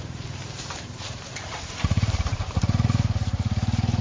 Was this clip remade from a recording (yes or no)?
yes